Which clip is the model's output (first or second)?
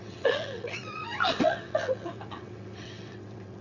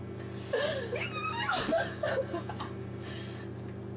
first